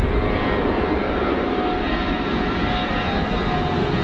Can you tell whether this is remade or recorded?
recorded